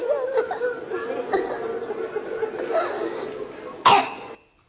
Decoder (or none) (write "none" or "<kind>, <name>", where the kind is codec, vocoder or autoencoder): none